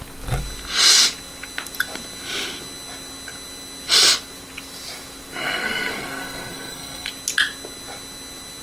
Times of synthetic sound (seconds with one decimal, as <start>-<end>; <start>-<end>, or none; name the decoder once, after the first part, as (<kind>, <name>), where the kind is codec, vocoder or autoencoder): 5.4-7.1 (codec, SNAC)